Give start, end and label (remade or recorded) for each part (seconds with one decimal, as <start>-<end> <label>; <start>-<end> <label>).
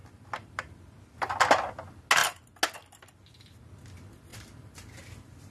0.0-5.5 recorded